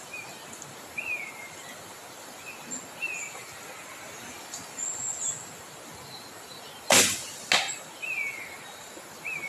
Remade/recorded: recorded